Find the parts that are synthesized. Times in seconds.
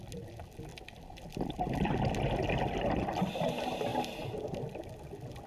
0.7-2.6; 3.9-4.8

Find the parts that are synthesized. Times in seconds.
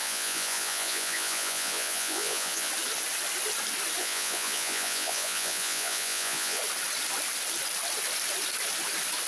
0.0-2.7; 4.0-6.6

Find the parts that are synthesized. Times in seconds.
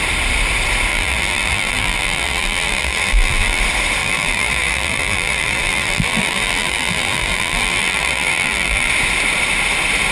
0.9-3.6; 4.0-8.9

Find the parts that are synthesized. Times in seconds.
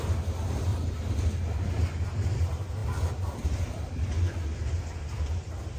0.7-1.6; 2.8-4.6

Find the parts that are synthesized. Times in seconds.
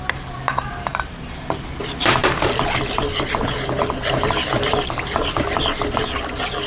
none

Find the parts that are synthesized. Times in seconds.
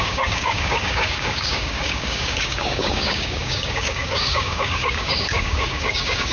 0.0-6.3